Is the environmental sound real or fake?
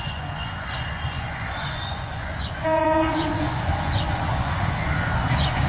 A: fake